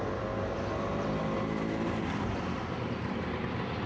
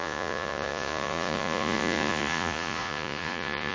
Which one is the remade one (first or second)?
second